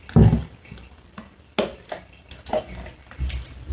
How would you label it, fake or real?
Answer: real